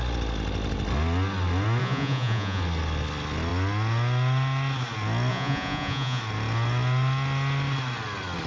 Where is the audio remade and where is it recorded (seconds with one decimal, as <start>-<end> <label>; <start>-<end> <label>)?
0.0-1.8 recorded; 1.8-2.6 remade; 2.6-5.3 recorded; 5.3-6.2 remade; 6.2-8.5 recorded